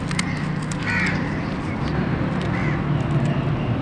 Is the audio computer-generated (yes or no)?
no